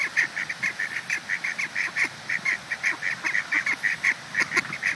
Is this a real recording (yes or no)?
yes